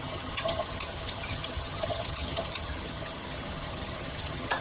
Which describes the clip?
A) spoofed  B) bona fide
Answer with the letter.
A